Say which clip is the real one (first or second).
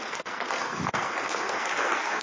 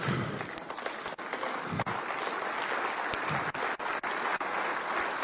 second